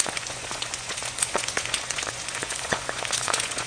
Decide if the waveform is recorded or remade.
remade